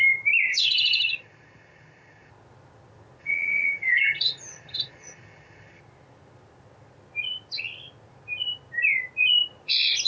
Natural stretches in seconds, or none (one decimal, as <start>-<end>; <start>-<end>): 0.0-0.5; 2.3-3.2; 5.8-10.1